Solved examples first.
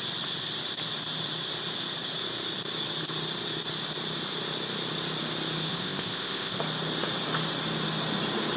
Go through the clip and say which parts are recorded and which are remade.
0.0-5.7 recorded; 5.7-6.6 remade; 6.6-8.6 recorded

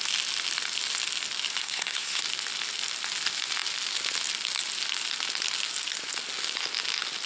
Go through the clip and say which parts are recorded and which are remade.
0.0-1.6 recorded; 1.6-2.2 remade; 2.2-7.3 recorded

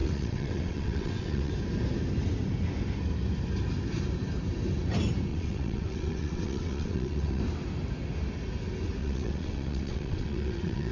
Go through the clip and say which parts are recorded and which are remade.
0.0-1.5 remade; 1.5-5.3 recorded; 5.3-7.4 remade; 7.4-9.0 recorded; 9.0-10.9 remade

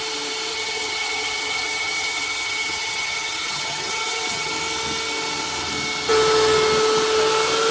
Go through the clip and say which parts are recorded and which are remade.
0.0-0.5 recorded; 0.5-4.5 remade; 4.5-7.7 recorded

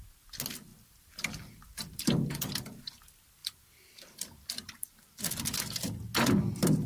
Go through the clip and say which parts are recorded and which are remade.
0.0-0.7 recorded; 0.7-3.0 remade; 3.0-3.4 recorded; 3.4-5.2 remade; 5.2-6.9 recorded

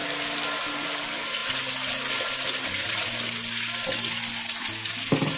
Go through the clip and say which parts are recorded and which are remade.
0.0-5.4 recorded